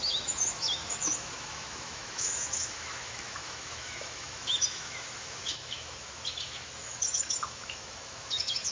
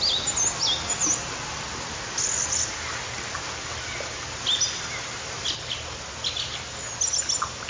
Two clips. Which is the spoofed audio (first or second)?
first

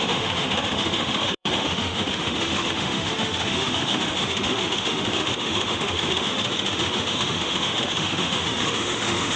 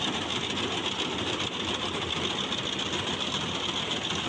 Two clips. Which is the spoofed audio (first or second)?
first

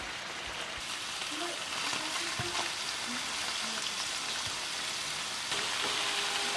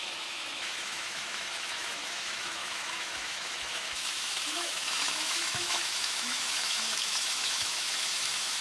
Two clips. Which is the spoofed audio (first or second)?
second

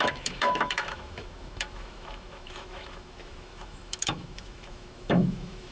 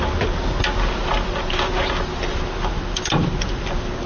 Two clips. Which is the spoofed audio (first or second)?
first